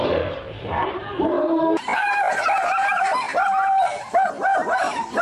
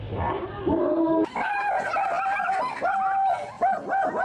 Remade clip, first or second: first